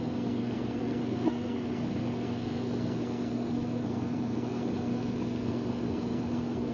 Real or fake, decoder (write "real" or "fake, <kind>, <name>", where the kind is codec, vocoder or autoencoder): fake, codec, SNAC